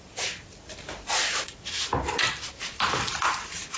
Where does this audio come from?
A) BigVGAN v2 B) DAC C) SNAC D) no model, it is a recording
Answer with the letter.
D